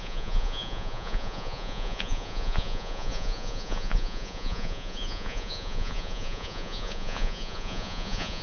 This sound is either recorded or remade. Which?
remade